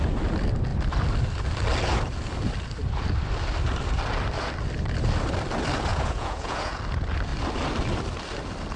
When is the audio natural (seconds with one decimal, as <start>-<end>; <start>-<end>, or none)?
0.0-5.9; 6.8-8.8